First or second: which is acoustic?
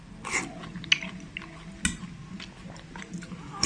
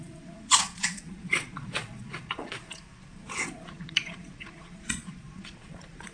first